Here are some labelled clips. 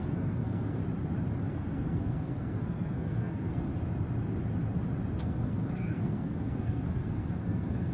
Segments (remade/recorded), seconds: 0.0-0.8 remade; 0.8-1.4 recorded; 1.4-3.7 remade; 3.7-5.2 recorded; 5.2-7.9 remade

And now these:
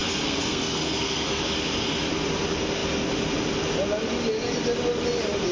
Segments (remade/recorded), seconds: 0.0-1.4 remade; 1.4-5.5 recorded